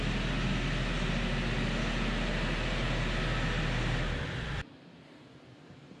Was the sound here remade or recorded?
recorded